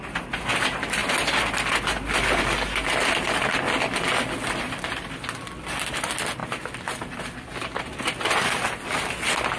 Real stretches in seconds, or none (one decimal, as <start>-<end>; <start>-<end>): 0.0-9.6